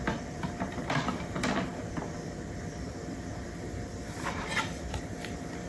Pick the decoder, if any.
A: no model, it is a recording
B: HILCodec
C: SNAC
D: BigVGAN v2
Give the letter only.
D